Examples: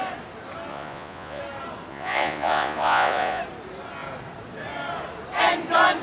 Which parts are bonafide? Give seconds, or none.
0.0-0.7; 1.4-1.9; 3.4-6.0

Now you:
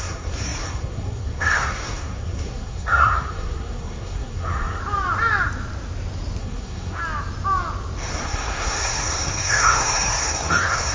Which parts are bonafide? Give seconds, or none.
4.8-6.4; 7.0-8.1